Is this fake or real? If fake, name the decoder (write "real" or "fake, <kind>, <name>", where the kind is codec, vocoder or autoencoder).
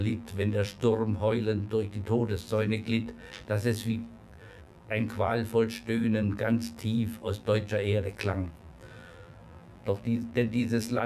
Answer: fake, vocoder, BigVGAN v2